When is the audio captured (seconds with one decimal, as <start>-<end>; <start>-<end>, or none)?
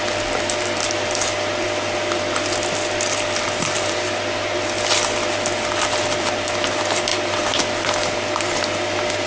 0.0-9.3